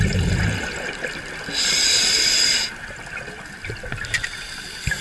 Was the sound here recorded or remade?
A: recorded